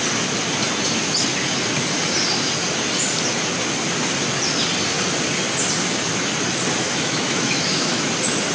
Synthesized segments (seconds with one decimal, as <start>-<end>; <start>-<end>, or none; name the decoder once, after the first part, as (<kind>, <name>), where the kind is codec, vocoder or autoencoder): 6.8-8.1 (autoencoder, DAC-VAE)